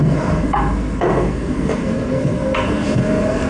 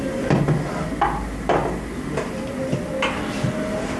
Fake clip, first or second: first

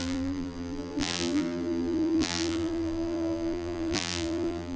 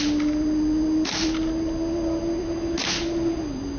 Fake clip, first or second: first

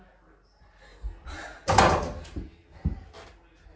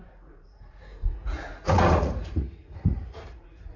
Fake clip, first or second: second